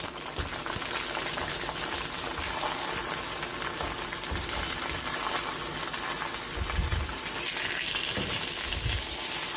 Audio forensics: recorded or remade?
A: recorded